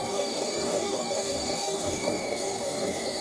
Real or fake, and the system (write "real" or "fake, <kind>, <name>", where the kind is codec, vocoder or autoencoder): fake, codec, DAC